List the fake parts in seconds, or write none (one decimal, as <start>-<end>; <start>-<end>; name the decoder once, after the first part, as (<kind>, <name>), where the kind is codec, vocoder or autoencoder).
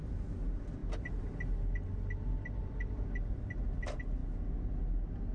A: none